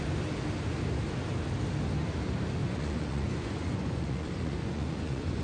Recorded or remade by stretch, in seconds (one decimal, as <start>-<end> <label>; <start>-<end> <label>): 0.0-2.6 recorded; 2.6-5.4 remade